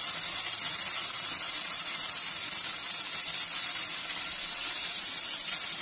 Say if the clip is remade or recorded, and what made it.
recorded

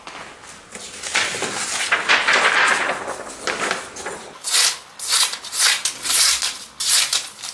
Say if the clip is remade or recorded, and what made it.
recorded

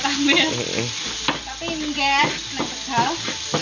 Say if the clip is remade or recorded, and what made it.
recorded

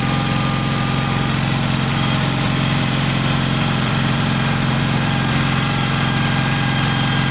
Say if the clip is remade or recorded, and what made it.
remade, vocoder, BigVGAN v2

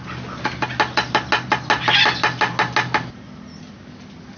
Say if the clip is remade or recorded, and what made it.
recorded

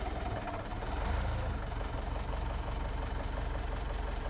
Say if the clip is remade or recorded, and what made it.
remade, vocoder, BigVGAN v2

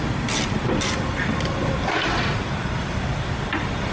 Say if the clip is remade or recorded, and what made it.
remade, vocoder, BigVGAN v2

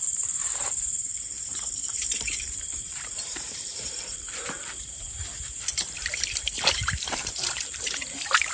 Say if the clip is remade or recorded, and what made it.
remade, vocoder, BigVGAN v2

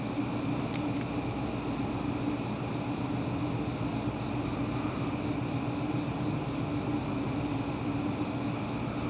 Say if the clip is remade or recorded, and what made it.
recorded